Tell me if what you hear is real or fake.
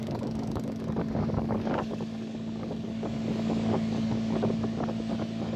fake